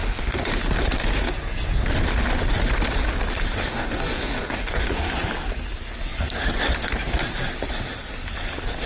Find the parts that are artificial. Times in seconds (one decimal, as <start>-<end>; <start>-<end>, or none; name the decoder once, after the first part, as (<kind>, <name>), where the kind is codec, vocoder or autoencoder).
0.0-0.5 (codec, DAC); 3.7-5.1